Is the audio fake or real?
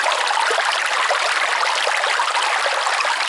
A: real